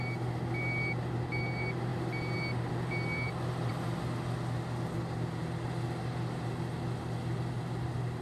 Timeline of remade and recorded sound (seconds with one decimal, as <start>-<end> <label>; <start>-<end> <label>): 0.0-8.2 recorded